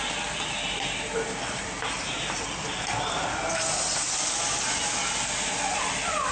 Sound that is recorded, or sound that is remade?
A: recorded